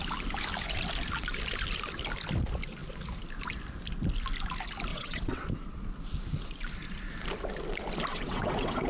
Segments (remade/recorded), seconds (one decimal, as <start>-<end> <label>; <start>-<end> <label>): 0.0-4.9 recorded; 4.9-5.4 remade; 5.4-8.1 recorded; 8.1-8.9 remade